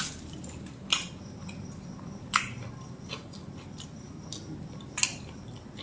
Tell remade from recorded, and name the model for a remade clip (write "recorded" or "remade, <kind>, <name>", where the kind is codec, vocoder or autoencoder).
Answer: recorded